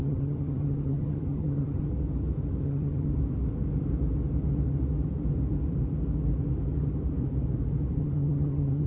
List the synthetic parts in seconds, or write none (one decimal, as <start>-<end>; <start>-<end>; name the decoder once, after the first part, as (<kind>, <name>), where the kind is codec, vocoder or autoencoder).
0.0-1.9 (vocoder, HiFi-GAN); 2.6-3.1; 8.0-8.9